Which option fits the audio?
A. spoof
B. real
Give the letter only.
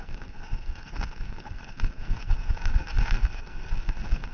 A